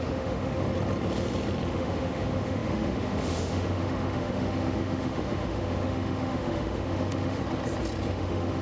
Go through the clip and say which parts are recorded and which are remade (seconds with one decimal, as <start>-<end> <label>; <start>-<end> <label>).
0.0-0.7 remade; 0.7-1.7 recorded; 1.7-7.4 remade; 7.4-8.1 recorded; 8.1-8.6 remade

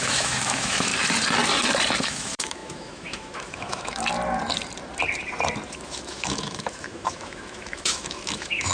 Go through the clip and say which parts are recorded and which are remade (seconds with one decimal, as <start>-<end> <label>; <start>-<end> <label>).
0.0-0.9 remade; 0.9-2.0 recorded; 2.0-4.0 remade; 4.0-5.7 recorded; 5.7-8.7 remade